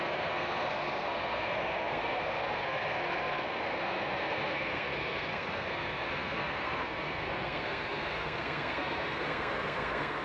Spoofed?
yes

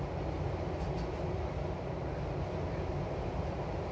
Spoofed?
no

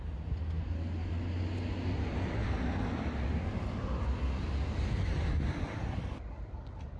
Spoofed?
no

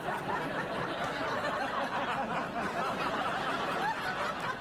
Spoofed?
no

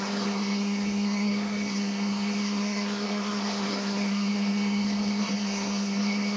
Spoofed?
yes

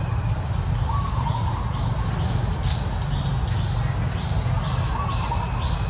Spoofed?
no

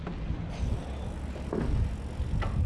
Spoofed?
no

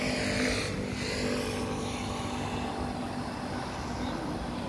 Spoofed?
no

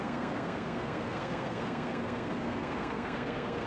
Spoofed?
yes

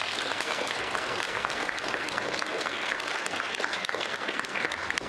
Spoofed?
yes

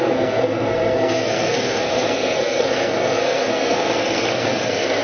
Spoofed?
yes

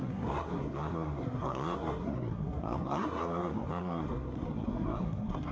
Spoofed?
yes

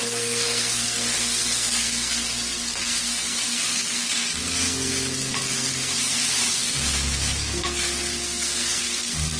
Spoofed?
yes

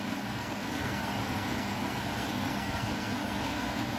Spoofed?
yes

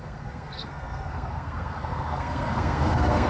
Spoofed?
yes